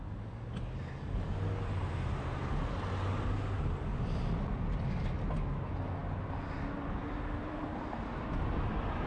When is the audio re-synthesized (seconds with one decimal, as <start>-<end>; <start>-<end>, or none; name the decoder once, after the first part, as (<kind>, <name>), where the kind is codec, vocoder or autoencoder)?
none